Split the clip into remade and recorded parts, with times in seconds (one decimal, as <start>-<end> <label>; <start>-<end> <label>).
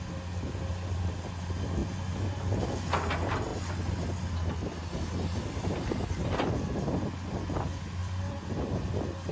0.0-8.0 recorded; 8.0-8.7 remade; 8.7-9.3 recorded